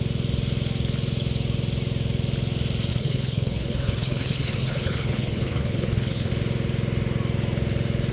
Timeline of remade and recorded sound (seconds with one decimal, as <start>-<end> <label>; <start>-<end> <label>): 0.0-2.9 recorded; 2.9-6.3 remade; 6.3-8.1 recorded